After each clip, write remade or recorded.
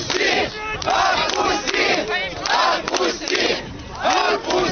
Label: recorded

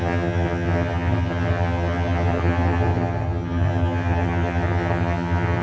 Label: remade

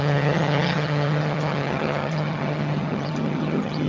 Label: remade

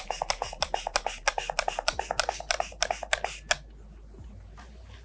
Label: recorded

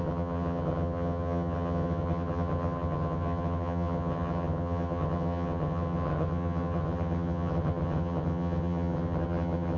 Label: remade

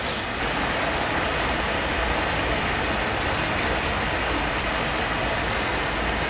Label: recorded